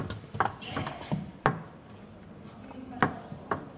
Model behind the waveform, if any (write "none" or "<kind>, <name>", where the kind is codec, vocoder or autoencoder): none